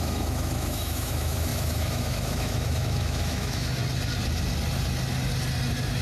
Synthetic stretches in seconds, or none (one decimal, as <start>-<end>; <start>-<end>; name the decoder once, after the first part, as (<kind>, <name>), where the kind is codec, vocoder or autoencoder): 0.0-3.8 (autoencoder, DAC-VAE)